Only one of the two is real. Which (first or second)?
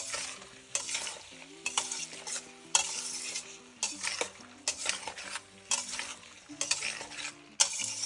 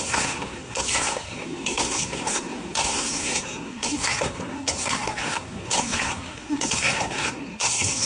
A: first